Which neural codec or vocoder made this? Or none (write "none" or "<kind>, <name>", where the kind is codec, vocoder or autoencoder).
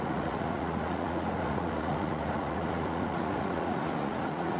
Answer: vocoder, Vocos